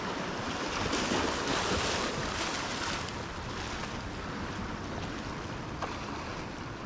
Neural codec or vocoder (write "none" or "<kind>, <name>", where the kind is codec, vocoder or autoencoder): none